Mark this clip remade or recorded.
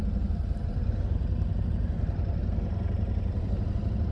recorded